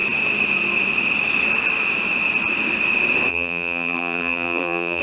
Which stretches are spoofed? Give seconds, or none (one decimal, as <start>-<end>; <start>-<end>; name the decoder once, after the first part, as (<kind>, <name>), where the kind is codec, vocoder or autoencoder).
3.3-5.0 (vocoder, BigVGAN v2)